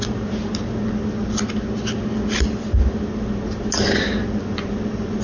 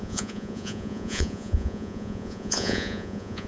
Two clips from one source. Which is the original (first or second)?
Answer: first